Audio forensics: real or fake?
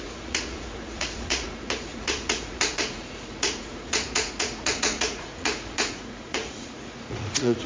fake